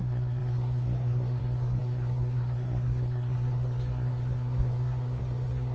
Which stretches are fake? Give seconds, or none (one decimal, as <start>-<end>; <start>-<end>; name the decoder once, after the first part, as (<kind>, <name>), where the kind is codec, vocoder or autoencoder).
0.0-5.7 (codec, SNAC)